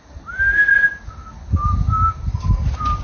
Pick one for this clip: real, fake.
real